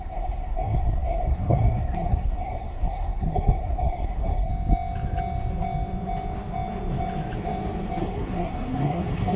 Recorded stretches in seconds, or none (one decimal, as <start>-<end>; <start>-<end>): 4.5-8.0